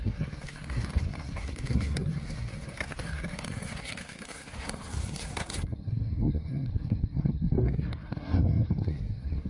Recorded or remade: remade